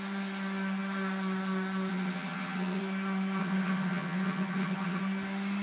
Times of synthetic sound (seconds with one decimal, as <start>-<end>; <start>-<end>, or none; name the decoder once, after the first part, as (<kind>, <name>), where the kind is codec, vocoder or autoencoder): 1.9-2.8 (vocoder, HiFi-GAN); 3.4-5.0